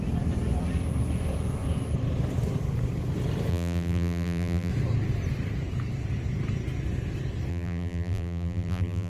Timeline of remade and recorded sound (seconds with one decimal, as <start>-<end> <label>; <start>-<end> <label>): 0.0-3.5 recorded; 3.5-4.7 remade; 4.7-7.5 recorded; 7.5-9.1 remade